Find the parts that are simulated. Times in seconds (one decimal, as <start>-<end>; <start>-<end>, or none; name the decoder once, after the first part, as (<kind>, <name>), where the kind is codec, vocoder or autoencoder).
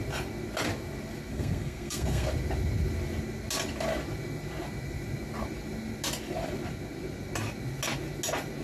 1.3-2.3 (codec, SNAC)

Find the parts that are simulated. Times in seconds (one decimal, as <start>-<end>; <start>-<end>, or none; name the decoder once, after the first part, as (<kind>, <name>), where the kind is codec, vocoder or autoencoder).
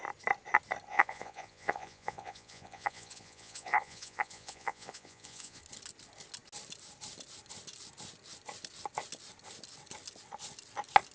0.9-5.6 (vocoder, Vocos)